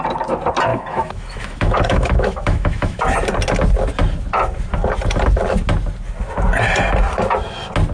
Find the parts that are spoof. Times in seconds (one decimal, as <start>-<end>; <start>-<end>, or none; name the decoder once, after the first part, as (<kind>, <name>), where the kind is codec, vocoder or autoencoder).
0.7-3.0 (autoencoder, DAC-VAE)